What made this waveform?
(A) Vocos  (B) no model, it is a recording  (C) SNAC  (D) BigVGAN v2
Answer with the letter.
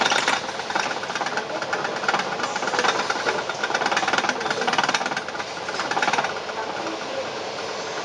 B